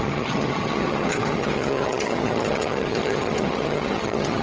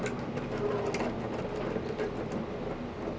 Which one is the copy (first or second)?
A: first